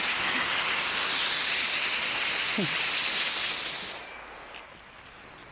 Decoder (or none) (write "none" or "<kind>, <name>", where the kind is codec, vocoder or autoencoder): none